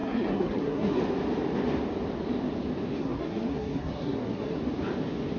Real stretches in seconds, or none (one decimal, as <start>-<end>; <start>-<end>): 1.0-3.0; 4.6-5.4